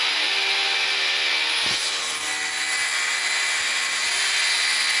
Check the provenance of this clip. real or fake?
real